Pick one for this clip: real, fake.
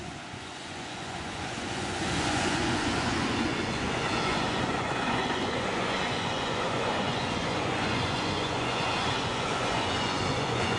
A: fake